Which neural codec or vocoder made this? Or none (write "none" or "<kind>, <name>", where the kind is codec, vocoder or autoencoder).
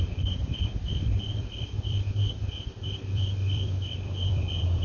vocoder, BigVGAN v2